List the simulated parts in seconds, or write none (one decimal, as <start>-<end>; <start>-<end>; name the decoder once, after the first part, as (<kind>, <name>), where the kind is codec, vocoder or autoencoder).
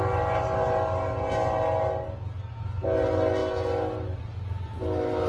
none